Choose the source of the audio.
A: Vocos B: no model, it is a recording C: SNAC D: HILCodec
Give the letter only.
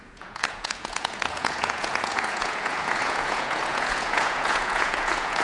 A